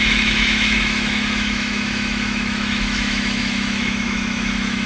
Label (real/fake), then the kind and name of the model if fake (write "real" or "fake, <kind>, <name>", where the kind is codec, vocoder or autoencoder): fake, autoencoder, DAC-VAE